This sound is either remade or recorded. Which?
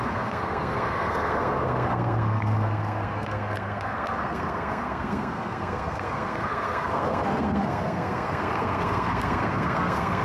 remade